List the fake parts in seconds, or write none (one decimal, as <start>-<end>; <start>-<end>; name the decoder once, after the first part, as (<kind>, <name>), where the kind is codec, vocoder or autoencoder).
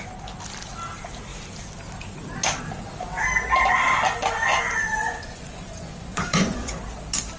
4.5-6.7 (vocoder, Vocos)